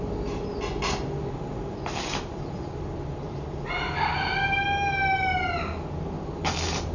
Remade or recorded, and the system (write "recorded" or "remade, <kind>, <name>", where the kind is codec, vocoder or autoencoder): recorded